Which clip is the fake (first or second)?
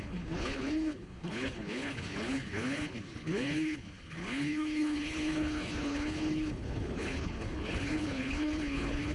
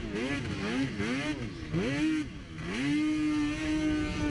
first